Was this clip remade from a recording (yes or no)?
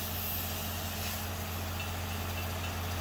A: no